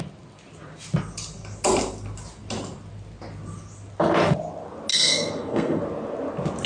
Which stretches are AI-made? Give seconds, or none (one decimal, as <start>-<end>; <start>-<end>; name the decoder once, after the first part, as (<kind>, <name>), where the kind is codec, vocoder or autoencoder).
4.9-5.8 (codec, SNAC)